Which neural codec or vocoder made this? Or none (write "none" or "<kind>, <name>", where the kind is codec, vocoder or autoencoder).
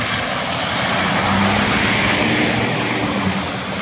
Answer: none